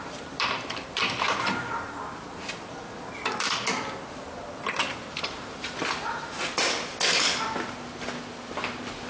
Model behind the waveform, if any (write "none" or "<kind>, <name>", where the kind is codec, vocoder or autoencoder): none